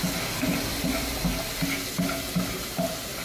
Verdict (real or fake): real